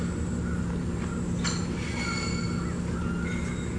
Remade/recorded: recorded